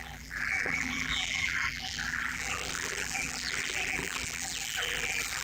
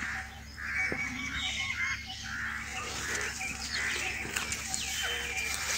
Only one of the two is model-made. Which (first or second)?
first